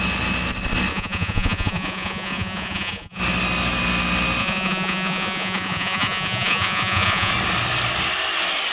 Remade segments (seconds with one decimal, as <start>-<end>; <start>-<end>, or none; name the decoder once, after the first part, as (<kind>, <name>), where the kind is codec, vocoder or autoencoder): 0.9-3.2 (vocoder, Vocos); 4.4-7.3